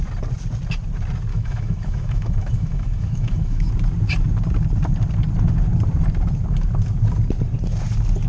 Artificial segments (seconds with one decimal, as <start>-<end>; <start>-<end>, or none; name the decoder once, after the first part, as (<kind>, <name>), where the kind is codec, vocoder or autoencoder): 1.3-3.7 (autoencoder, DAC-VAE)